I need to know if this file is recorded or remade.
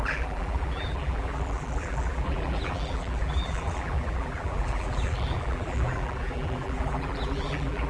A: remade